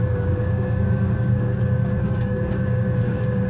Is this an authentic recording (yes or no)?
no